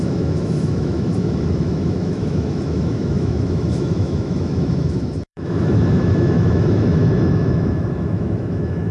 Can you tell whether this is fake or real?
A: fake